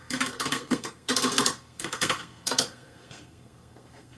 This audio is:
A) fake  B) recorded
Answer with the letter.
A